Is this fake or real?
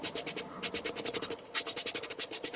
fake